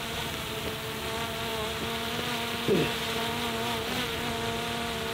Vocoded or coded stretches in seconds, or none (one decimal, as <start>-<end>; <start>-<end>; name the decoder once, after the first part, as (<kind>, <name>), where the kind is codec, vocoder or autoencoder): none